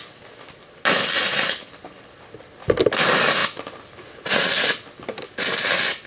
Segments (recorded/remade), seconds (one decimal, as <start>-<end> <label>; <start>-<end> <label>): 0.0-6.1 recorded